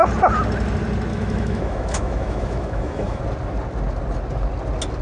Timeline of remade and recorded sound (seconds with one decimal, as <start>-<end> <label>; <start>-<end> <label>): 0.0-1.1 recorded; 1.1-3.2 remade; 3.2-5.0 recorded